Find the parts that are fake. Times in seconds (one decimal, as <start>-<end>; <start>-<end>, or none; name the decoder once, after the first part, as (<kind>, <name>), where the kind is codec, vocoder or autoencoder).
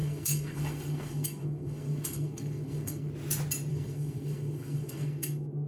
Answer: 0.0-3.1 (codec, SNAC); 3.7-5.7